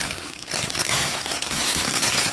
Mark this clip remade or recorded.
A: remade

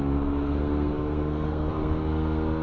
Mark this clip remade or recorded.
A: remade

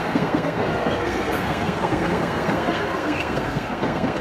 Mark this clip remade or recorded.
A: remade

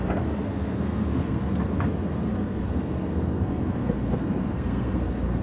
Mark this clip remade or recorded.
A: remade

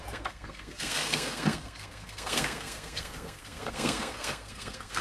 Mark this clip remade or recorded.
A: remade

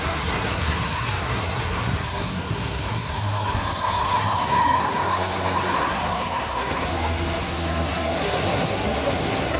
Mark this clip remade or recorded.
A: remade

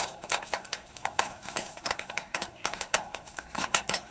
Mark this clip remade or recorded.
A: remade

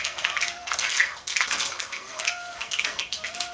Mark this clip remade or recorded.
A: remade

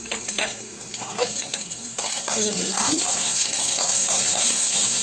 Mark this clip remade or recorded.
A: remade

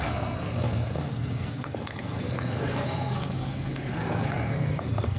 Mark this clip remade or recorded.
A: remade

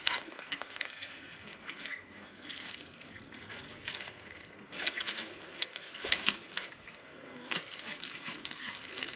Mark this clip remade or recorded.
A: remade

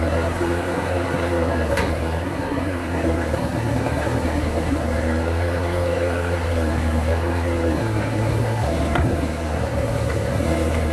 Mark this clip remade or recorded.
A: remade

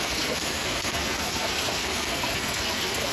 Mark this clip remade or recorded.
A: remade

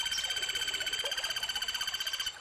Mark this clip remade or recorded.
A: recorded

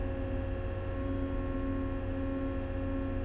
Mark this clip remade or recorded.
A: recorded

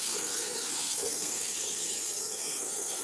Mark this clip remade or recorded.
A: remade